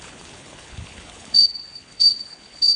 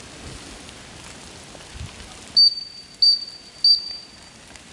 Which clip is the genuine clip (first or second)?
second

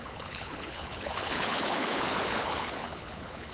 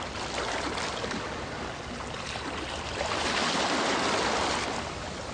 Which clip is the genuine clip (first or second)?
second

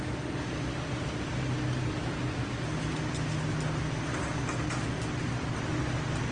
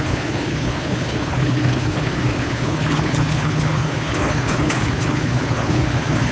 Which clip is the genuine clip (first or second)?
first